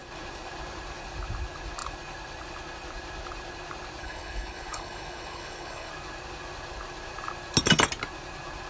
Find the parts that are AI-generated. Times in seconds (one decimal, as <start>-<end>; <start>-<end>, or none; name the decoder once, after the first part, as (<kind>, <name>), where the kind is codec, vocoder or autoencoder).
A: 4.0-5.9 (codec, HILCodec)